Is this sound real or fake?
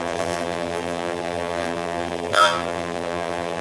fake